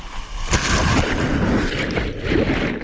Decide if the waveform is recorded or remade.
recorded